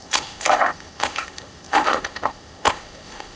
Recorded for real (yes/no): no